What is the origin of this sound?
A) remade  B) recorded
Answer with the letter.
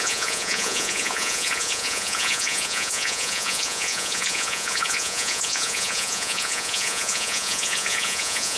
A